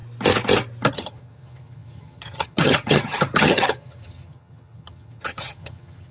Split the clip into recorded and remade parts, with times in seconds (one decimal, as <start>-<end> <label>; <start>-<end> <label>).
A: 0.0-0.9 recorded; 0.9-6.1 remade